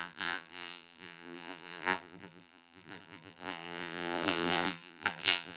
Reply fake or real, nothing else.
fake